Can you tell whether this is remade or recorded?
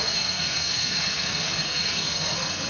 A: remade